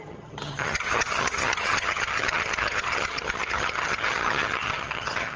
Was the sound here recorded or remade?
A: remade